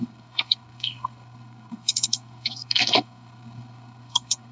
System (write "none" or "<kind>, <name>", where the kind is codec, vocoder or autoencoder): codec, SNAC